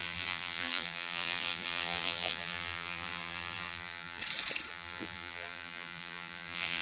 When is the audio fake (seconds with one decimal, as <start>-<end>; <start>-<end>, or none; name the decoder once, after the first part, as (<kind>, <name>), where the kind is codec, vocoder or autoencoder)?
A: 0.0-4.2 (vocoder, BigVGAN v2); 4.7-6.8